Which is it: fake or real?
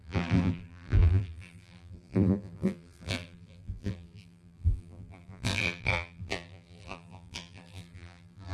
fake